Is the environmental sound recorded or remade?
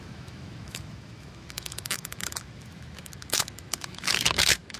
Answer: remade